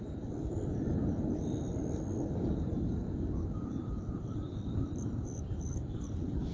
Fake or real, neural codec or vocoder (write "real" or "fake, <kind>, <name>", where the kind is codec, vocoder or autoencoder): real